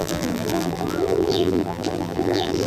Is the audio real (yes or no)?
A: no